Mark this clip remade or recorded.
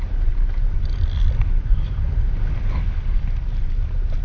recorded